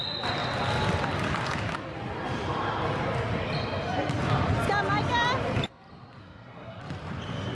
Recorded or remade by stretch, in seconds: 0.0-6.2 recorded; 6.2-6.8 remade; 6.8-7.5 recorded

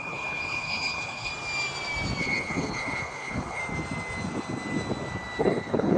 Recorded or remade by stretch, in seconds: 0.0-1.3 remade; 1.3-2.2 recorded; 2.2-3.6 remade; 3.6-5.4 recorded; 5.4-6.0 remade

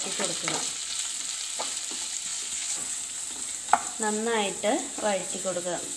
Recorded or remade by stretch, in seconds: 0.0-2.3 recorded; 2.3-3.0 remade; 3.0-5.2 recorded; 5.2-6.0 remade

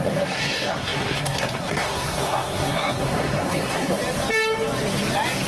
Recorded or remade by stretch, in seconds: 0.0-4.0 remade; 4.0-5.5 recorded